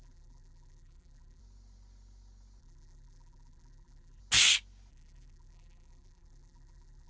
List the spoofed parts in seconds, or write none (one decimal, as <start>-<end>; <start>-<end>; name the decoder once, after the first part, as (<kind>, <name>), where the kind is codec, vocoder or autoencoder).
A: 0.0-1.4 (vocoder, BigVGAN v2); 2.6-4.2; 4.9-7.1

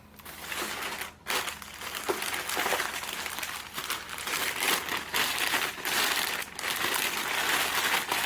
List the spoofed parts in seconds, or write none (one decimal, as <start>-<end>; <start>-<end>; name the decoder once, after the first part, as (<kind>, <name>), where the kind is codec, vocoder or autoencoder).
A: none

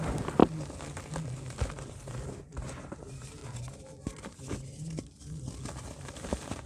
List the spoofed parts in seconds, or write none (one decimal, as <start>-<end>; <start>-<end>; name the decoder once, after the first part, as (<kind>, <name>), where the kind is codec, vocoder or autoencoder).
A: 0.0-0.4 (vocoder, BigVGAN v2); 1.9-3.4; 6.2-6.7